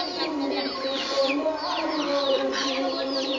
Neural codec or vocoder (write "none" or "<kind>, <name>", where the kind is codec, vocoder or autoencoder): none